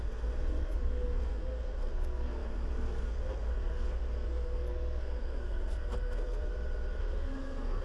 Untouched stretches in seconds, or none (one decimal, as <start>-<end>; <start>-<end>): 6.5-7.0